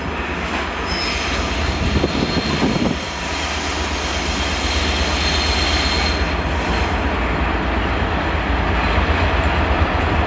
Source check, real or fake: real